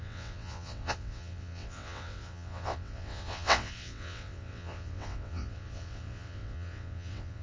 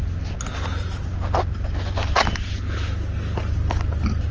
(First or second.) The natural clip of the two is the second